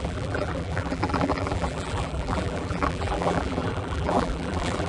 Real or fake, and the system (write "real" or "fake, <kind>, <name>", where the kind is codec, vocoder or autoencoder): fake, vocoder, BigVGAN v2